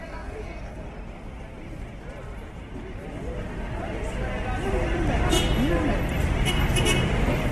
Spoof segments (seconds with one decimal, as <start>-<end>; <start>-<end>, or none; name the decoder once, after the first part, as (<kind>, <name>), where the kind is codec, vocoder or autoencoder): 0.0-0.9 (codec, DAC)